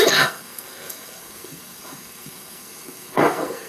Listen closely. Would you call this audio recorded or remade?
remade